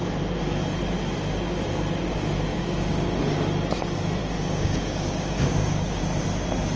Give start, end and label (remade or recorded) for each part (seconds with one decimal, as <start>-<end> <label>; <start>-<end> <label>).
0.0-2.5 recorded; 2.5-3.2 remade; 3.2-4.2 recorded; 4.2-6.0 remade; 6.0-6.8 recorded